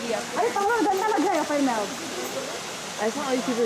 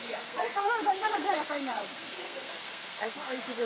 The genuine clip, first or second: first